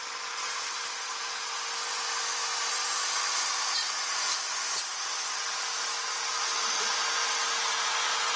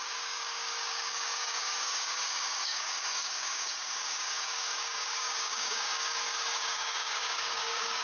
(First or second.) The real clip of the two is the first